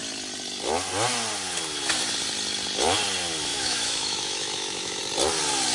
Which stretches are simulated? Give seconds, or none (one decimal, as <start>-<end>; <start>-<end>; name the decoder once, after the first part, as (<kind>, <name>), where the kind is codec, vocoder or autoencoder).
3.5-5.0 (autoencoder, DAC-VAE)